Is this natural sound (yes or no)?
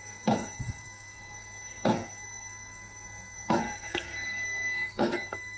no